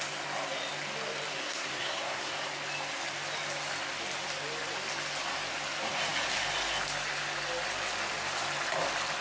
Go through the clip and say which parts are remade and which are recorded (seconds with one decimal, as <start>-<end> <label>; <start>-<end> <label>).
0.0-1.4 recorded; 1.4-2.3 remade; 2.3-9.2 recorded